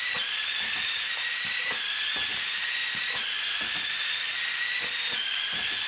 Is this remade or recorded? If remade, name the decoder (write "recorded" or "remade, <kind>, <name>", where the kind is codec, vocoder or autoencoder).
recorded